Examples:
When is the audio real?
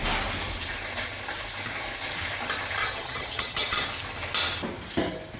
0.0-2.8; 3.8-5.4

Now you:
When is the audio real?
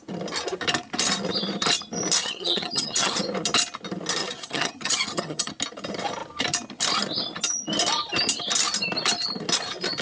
0.0-2.2; 3.2-4.2; 5.5-10.0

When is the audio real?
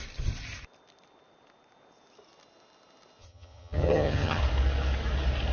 0.0-3.2; 4.4-5.5